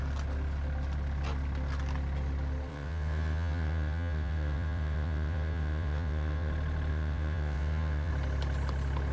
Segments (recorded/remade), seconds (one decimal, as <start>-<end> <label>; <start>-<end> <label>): 0.0-2.7 recorded; 2.7-6.5 remade; 6.5-6.9 recorded; 6.9-8.1 remade; 8.1-9.1 recorded